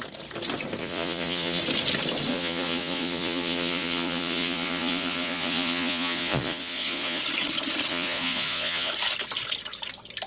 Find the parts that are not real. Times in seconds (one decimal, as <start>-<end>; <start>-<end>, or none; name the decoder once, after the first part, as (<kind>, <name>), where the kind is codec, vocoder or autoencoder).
0.8-1.6 (vocoder, Vocos); 2.3-7.2; 7.9-8.9